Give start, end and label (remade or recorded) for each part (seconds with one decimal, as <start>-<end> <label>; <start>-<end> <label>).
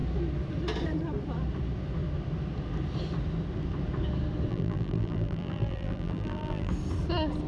0.0-4.5 recorded; 4.5-6.7 remade; 6.7-7.5 recorded